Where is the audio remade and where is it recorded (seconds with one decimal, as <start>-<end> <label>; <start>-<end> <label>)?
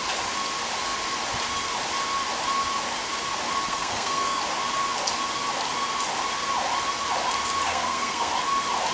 0.0-3.7 recorded; 3.7-4.4 remade; 4.4-7.7 recorded; 7.7-8.3 remade; 8.3-8.9 recorded